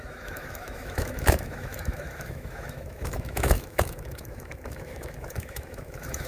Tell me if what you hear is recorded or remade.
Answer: remade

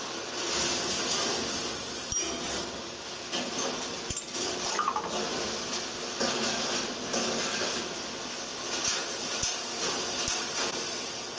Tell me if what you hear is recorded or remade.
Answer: recorded